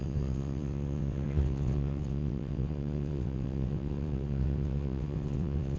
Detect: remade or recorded remade